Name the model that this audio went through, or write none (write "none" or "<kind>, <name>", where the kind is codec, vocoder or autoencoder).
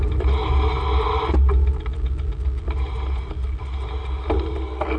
none